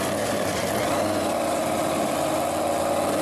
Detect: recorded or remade recorded